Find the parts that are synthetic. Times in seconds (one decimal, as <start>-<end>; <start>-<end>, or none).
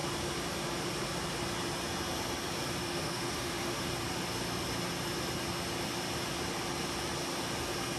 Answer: 2.8-3.9